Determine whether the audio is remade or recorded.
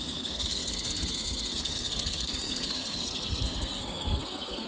remade